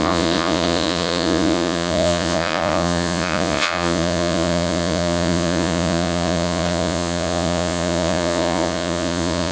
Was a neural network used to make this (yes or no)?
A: yes